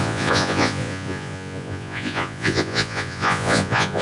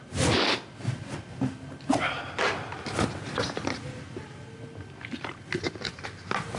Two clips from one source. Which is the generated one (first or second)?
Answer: first